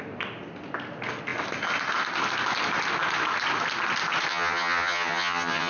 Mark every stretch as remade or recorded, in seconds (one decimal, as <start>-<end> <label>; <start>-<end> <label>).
0.0-4.3 recorded; 4.3-5.7 remade